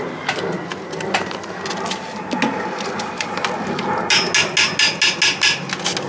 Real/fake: real